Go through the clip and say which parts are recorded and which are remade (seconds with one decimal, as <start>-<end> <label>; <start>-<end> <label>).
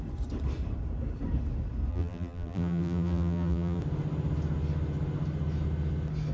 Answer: 0.0-1.9 recorded; 1.9-3.8 remade; 3.8-6.3 recorded